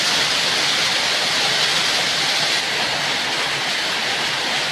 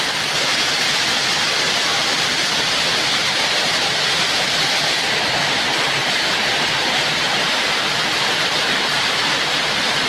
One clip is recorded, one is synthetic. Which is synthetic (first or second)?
second